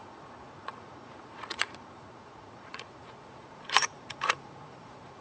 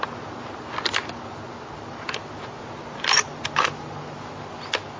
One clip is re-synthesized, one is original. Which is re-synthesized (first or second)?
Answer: first